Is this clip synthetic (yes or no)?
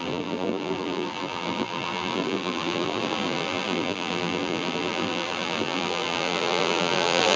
yes